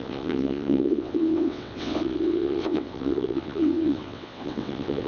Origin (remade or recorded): remade